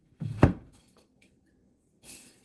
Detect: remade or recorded remade